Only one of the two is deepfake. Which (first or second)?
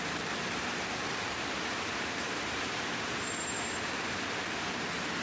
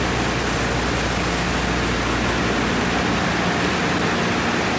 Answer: first